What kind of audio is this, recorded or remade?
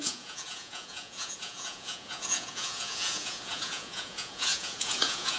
remade